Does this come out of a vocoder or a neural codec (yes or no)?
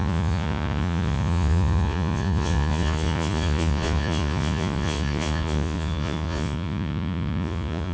yes